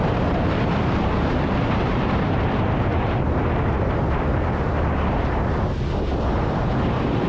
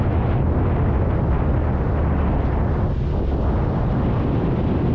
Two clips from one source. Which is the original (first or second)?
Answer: second